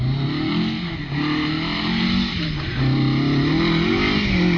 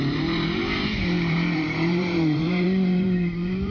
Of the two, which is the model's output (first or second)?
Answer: second